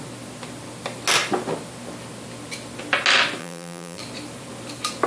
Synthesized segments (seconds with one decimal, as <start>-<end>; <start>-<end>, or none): 3.4-4.0